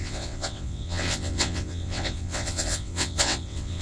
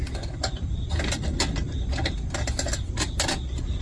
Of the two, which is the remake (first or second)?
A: first